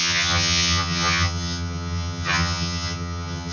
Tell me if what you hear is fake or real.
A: fake